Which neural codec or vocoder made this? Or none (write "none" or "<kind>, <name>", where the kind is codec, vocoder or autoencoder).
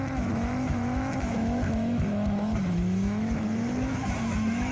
autoencoder, DAC-VAE